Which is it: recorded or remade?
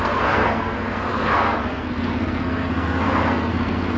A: remade